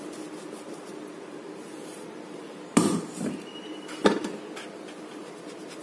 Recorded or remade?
recorded